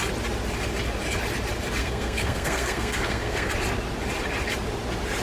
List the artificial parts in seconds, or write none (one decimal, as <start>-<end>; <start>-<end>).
1.8-3.5